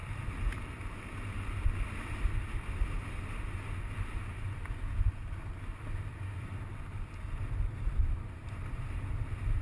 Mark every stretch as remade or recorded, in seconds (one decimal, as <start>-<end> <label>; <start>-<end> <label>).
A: 0.0-9.6 recorded

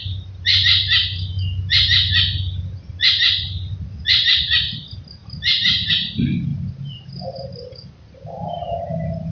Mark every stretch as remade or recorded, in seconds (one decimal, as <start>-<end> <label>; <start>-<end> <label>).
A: 0.0-5.2 recorded; 5.2-5.9 remade; 5.9-6.5 recorded; 6.5-8.8 remade; 8.8-9.3 recorded

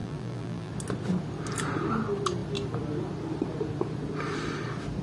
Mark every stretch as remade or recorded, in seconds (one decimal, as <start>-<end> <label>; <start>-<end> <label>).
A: 0.0-0.7 remade; 0.7-5.0 recorded

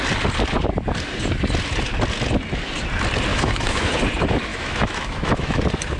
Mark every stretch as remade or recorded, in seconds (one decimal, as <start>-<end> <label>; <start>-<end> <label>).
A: 0.0-3.3 recorded; 3.3-3.9 remade; 3.9-4.5 recorded; 4.5-5.6 remade; 5.6-6.0 recorded